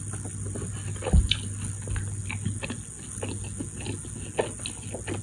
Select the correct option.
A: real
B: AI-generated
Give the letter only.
A